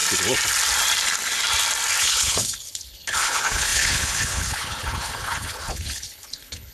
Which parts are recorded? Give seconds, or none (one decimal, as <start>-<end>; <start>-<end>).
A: 0.0-2.0